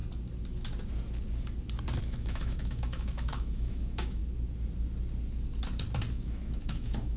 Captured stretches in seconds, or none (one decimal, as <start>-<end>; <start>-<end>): 0.0-2.0; 4.2-6.1